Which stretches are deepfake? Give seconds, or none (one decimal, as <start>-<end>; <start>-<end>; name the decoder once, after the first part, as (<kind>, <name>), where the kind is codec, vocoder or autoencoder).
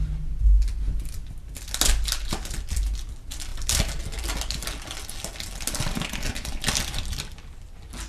none